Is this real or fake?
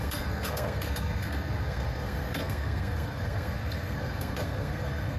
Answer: fake